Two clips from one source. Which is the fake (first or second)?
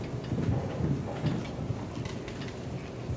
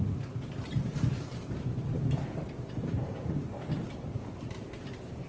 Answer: second